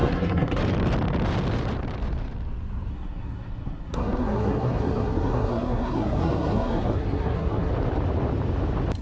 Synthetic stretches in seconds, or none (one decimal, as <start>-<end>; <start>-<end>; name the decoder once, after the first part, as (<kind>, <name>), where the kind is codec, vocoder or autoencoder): 0.0-0.6 (codec, SNAC); 2.9-7.7